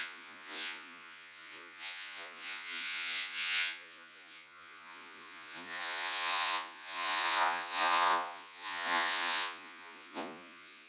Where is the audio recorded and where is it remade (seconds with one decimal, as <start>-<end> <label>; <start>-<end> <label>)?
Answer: 0.0-10.9 remade